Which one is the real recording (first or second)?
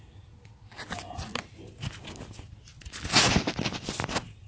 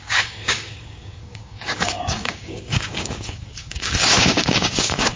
first